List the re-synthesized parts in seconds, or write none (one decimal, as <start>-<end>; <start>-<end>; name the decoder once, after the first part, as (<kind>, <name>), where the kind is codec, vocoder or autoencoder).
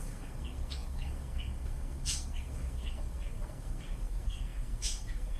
0.0-5.4 (codec, SNAC)